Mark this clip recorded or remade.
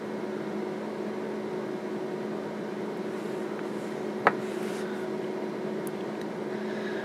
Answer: recorded